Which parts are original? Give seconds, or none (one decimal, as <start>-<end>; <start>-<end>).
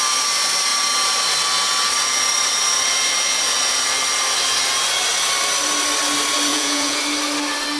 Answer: 0.0-6.5; 7.0-7.8